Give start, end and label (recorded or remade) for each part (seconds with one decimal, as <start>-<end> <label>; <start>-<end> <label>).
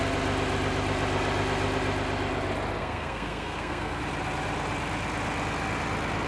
0.0-2.8 recorded; 2.8-4.0 remade; 4.0-6.3 recorded